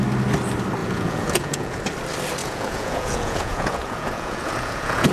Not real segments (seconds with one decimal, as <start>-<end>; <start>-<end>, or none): 0.8-1.8; 2.4-5.1